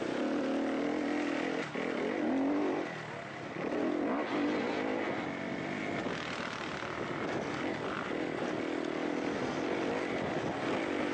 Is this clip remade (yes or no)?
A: no